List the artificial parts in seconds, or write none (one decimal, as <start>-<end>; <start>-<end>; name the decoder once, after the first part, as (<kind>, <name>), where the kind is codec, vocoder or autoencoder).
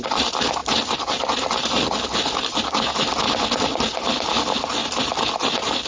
none